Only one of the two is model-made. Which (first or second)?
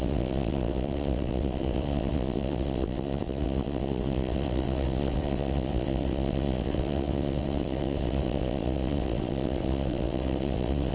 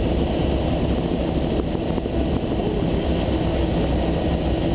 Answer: first